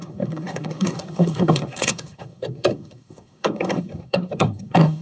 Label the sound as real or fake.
fake